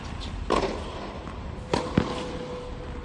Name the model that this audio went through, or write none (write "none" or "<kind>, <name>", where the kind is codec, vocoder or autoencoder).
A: none